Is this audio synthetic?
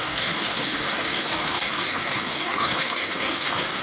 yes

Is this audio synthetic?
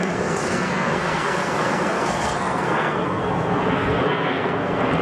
yes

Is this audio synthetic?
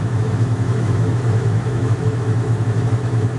yes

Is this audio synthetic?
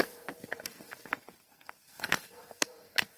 yes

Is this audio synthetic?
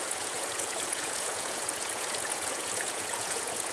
yes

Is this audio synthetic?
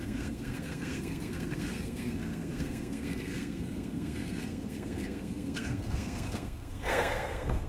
yes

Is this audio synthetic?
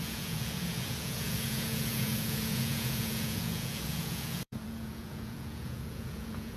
yes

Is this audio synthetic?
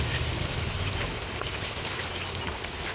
no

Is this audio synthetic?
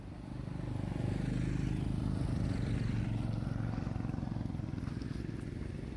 no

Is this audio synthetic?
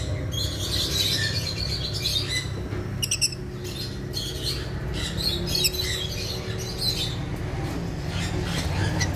no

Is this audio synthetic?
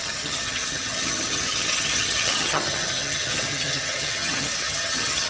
yes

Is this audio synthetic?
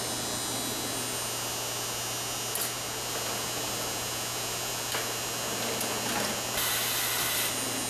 no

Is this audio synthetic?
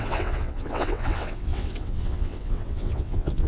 yes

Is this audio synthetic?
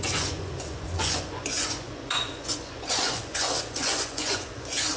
yes